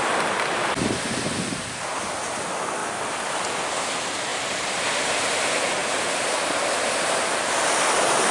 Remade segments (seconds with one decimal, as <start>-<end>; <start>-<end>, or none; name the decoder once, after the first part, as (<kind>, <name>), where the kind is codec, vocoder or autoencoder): 2.8-3.8 (vocoder, BigVGAN v2); 4.3-5.3; 5.8-6.4